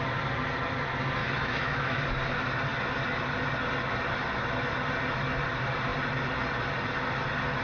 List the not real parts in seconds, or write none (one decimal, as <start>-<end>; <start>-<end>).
1.2-2.0